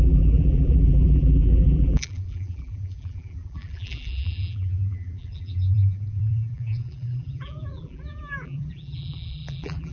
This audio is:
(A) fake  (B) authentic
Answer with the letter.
A